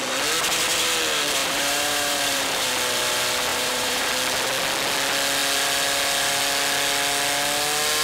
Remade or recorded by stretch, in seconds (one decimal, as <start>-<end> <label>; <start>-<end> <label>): 0.0-1.4 recorded; 1.4-2.7 remade; 2.7-3.5 recorded; 3.5-4.1 remade; 4.1-8.0 recorded